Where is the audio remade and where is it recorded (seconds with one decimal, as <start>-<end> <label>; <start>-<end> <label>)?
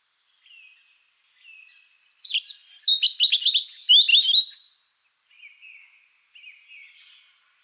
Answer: 0.0-7.6 recorded